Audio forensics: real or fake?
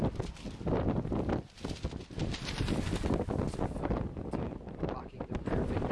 real